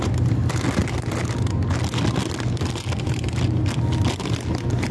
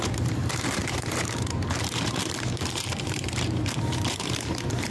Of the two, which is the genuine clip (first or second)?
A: first